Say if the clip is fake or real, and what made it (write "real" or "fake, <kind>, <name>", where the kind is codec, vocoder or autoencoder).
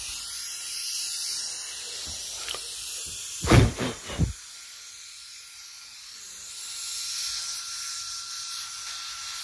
real